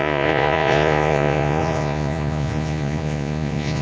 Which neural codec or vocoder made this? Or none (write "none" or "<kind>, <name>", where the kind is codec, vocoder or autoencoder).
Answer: vocoder, Vocos